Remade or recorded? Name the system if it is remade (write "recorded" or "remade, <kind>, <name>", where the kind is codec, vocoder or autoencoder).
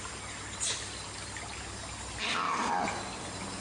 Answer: recorded